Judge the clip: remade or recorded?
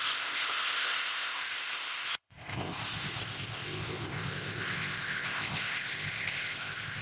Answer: remade